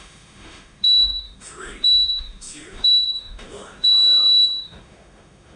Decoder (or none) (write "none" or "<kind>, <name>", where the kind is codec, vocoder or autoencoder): autoencoder, DAC-VAE